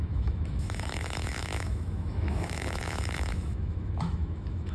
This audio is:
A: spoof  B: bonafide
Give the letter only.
A